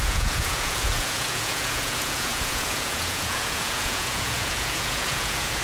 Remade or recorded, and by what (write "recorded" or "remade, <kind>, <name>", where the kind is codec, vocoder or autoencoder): remade, vocoder, Vocos